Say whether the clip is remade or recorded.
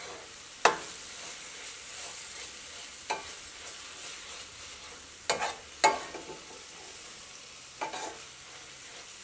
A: recorded